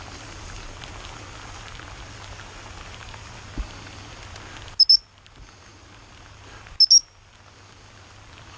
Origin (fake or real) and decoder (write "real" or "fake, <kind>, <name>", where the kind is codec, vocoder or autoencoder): real